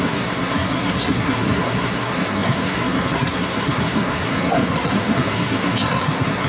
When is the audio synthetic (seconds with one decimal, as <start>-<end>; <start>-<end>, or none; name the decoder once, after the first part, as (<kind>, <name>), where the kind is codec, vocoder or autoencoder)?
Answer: 0.0-6.5 (codec, SNAC)